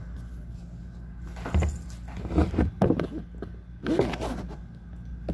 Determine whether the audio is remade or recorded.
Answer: recorded